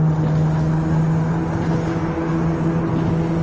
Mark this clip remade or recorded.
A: recorded